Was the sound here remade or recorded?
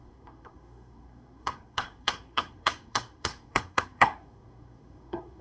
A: remade